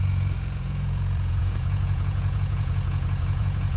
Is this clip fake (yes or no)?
yes